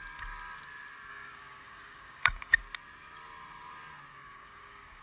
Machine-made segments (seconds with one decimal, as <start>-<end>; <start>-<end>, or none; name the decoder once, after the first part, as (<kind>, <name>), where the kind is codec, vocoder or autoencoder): 1.1-2.6 (codec, DAC); 4.1-5.0